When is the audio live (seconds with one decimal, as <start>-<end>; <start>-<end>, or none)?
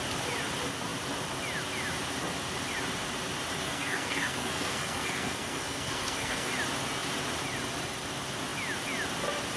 0.0-3.6; 6.5-9.6